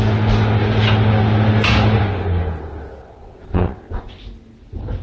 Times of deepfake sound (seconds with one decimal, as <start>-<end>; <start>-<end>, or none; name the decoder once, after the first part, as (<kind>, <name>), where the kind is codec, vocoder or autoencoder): 3.2-4.1 (vocoder, WaveNeXt)